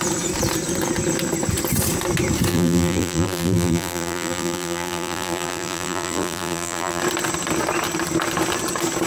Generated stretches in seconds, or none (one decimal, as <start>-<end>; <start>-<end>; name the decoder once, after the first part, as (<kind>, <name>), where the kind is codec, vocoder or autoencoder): 2.5-7.0 (vocoder, BigVGAN v2)